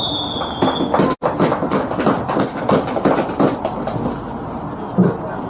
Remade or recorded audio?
recorded